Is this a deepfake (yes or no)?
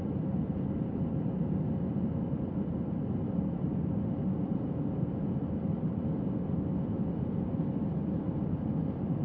no